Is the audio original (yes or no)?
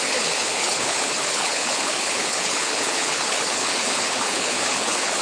no